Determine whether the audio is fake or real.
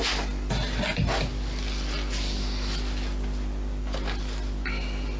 real